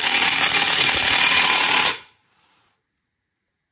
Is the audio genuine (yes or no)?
no